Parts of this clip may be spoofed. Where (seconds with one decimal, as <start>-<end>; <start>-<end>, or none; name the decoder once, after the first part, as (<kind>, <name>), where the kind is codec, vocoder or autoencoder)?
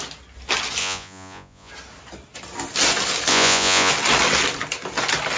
0.8-1.7 (vocoder, Vocos); 3.3-3.9